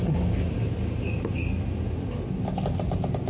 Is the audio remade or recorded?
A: recorded